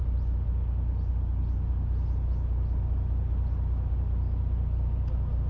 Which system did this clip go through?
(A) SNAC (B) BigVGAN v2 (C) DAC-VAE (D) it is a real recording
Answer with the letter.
D